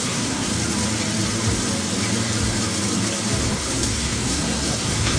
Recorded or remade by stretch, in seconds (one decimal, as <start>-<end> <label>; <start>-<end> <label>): 0.0-0.5 remade; 0.5-3.4 recorded; 3.4-5.2 remade